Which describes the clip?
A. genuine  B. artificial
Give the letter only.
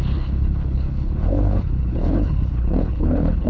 B